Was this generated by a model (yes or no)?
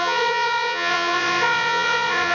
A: yes